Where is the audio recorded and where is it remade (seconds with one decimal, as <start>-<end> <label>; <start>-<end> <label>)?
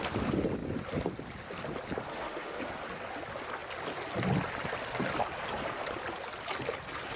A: 0.0-2.1 recorded; 2.1-2.6 remade; 2.6-7.2 recorded